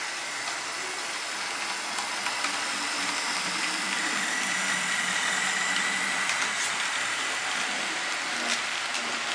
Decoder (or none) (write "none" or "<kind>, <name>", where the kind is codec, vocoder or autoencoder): none